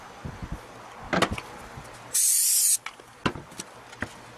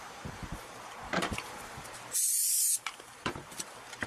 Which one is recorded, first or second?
first